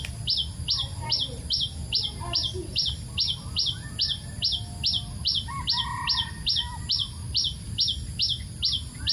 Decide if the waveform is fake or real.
real